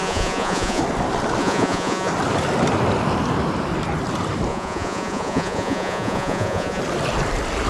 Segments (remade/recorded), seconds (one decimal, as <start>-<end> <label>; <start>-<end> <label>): 0.0-0.8 remade; 0.8-1.4 recorded; 1.4-2.1 remade; 2.1-4.5 recorded; 4.5-6.8 remade; 6.8-7.7 recorded